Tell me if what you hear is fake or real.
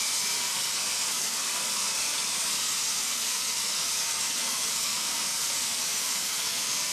fake